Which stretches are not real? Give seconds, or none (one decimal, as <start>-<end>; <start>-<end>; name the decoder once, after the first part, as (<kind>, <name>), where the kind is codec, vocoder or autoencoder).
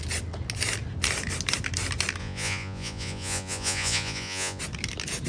2.2-4.6 (vocoder, Vocos)